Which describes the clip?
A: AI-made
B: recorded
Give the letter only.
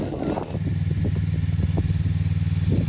B